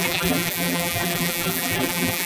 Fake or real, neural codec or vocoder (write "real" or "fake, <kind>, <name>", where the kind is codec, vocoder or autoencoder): fake, vocoder, BigVGAN v2